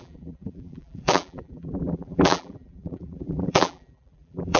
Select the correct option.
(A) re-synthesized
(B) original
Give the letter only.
A